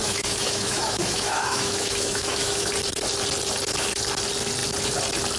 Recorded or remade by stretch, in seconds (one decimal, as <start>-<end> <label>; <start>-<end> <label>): 0.0-2.7 remade; 2.7-5.4 recorded